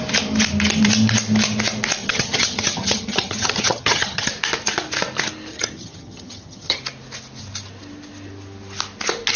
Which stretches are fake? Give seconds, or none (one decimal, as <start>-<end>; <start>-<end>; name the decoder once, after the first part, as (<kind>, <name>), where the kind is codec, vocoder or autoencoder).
2.0-4.3 (vocoder, HiFi-GAN); 5.5-6.8